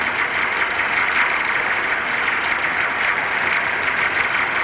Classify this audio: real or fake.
real